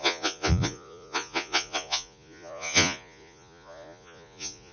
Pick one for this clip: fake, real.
fake